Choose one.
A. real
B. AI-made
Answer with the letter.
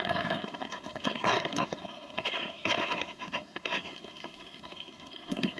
B